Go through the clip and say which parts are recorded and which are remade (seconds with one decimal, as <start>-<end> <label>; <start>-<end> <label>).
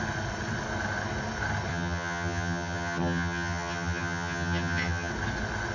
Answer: 0.0-1.7 recorded; 1.7-5.1 remade; 5.1-5.7 recorded